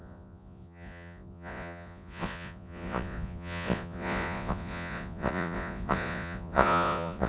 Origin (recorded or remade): remade